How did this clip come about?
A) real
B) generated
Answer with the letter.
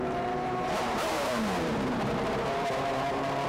B